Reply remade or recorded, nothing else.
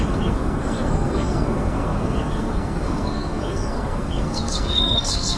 remade